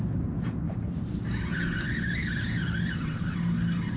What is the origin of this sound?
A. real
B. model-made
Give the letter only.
A